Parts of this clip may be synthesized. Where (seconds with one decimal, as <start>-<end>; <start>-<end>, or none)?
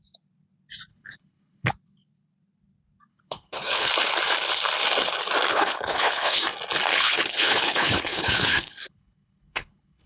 0.9-1.7; 3.1-3.9; 5.5-6.4; 6.9-10.1